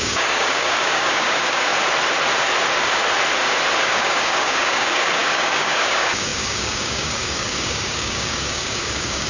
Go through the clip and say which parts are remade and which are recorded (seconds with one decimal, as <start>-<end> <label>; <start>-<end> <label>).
0.0-1.7 remade; 1.7-3.8 recorded; 3.8-9.3 remade